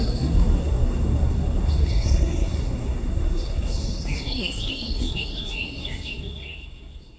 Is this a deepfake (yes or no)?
yes